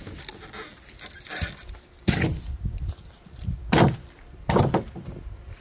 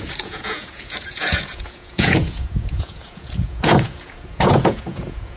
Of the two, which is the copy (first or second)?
second